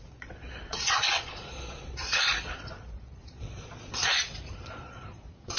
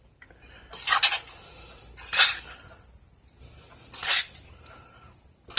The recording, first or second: second